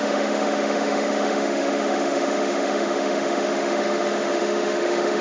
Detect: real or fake fake